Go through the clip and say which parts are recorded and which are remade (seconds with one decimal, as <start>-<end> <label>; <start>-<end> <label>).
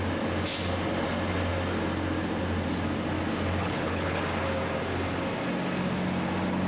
0.0-3.6 recorded; 3.6-4.2 remade; 4.2-6.7 recorded